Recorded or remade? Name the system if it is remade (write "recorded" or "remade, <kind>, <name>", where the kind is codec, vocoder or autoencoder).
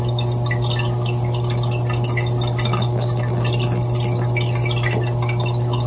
recorded